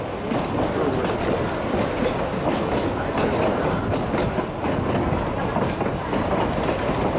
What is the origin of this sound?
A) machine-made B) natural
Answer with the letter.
B